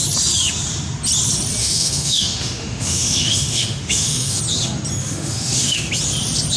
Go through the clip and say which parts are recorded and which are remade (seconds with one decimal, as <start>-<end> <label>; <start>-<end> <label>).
0.0-1.6 recorded; 1.6-4.4 remade; 4.4-5.0 recorded; 5.0-5.9 remade; 5.9-6.6 recorded

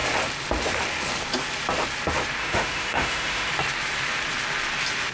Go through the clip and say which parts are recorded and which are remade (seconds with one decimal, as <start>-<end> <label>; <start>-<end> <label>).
0.0-2.4 recorded; 2.4-3.5 remade; 3.5-5.1 recorded

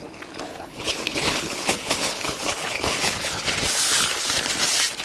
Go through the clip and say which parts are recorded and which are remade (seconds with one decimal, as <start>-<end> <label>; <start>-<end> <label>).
0.0-0.5 recorded; 0.5-3.5 remade; 3.5-3.9 recorded; 3.9-4.5 remade; 4.5-5.0 recorded

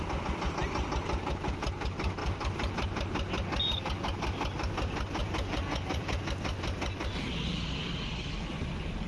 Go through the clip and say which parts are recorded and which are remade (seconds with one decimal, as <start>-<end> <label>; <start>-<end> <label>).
0.0-5.2 recorded; 5.2-6.3 remade; 6.3-9.1 recorded

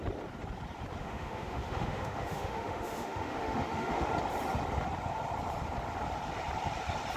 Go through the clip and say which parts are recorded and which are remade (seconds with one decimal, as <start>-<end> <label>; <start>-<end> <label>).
0.0-1.0 recorded; 1.0-4.1 remade; 4.1-7.2 recorded

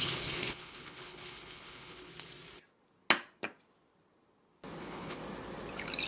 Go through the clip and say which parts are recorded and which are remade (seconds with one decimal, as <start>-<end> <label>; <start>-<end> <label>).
0.0-2.1 remade; 2.1-4.8 recorded; 4.8-5.2 remade; 5.2-6.1 recorded